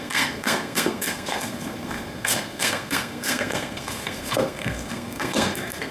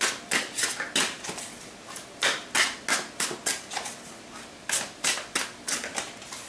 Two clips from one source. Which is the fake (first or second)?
first